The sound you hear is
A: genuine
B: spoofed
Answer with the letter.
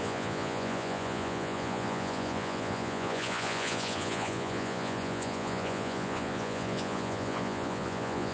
B